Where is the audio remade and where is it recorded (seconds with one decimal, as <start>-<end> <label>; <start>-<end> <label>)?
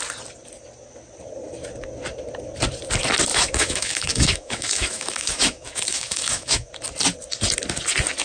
0.0-3.3 recorded; 3.3-6.7 remade; 6.7-8.2 recorded